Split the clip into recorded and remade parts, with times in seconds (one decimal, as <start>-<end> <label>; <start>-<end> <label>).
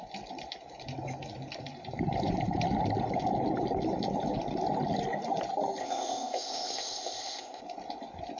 0.0-5.8 recorded; 5.8-7.6 remade; 7.6-8.4 recorded